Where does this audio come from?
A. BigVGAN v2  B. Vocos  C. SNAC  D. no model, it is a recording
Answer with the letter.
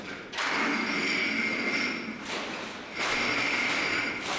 D